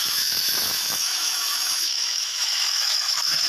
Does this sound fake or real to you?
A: fake